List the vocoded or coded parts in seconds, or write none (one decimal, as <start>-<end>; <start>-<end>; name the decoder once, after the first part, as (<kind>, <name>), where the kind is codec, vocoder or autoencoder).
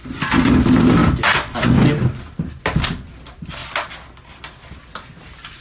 none